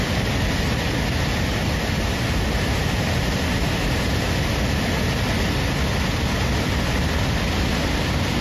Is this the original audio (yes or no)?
yes